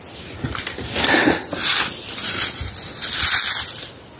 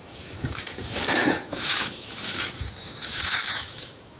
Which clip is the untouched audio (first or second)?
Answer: first